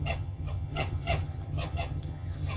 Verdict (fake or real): fake